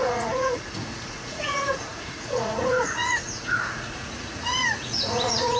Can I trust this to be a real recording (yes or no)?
no